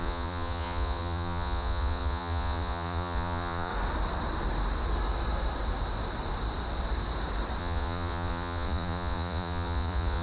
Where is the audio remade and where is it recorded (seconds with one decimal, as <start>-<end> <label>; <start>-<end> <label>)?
0.0-3.7 remade; 3.7-7.6 recorded; 7.6-10.2 remade